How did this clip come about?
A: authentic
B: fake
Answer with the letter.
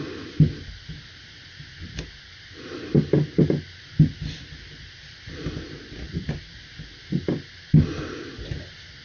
A